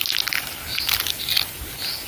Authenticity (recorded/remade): recorded